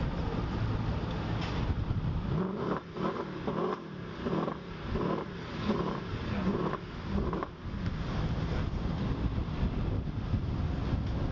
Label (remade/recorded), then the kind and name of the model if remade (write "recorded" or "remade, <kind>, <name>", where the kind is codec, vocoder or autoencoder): recorded